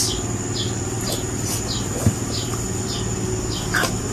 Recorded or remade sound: recorded